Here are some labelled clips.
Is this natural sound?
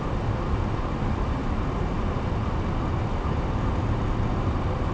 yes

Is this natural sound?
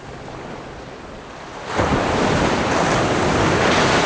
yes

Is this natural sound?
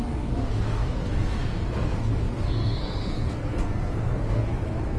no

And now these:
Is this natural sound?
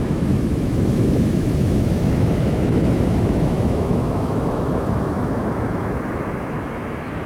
no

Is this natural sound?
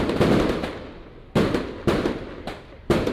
yes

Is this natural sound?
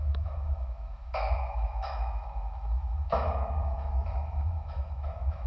no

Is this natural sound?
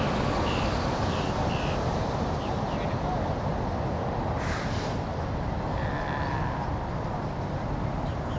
yes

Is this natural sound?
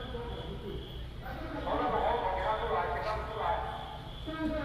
yes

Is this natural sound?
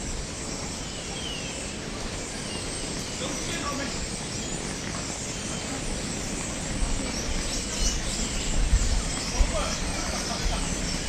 yes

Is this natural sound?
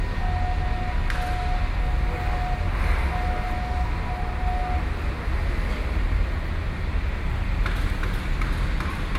yes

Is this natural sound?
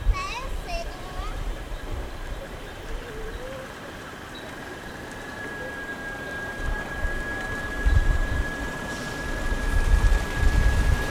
no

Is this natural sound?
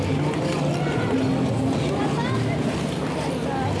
yes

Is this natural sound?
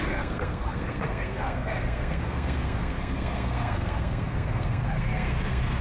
no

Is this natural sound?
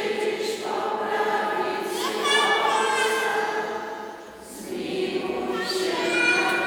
no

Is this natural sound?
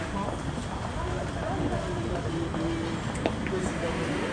yes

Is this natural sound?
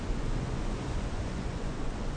no